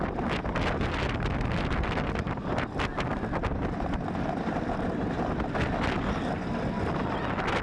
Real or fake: real